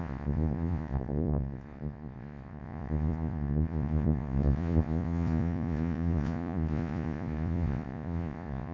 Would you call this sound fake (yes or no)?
yes